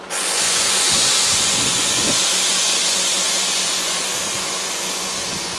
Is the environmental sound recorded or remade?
remade